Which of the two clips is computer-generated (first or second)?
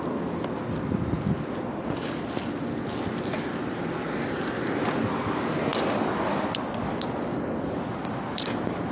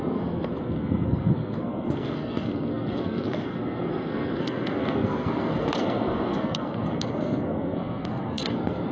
second